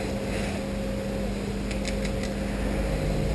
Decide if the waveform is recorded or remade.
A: recorded